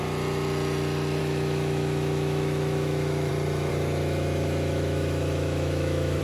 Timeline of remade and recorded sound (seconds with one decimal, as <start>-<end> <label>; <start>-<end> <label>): 0.0-1.2 recorded; 1.2-3.3 remade; 3.3-3.7 recorded; 3.7-6.2 remade